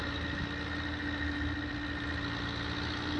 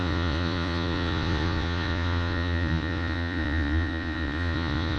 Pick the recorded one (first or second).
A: first